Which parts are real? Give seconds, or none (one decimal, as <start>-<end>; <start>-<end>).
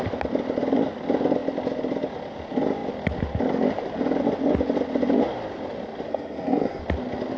0.0-6.1; 6.8-7.4